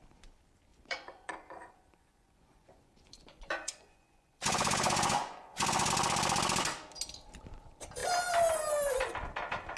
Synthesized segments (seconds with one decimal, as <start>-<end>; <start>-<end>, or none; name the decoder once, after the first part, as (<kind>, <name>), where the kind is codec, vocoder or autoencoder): 0.7-5.9 (vocoder, Vocos)